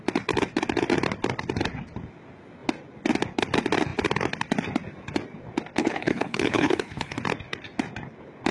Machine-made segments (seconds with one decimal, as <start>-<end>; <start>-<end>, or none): 5.8-7.2